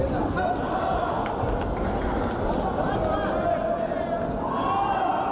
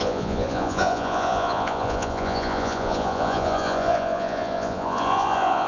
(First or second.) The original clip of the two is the first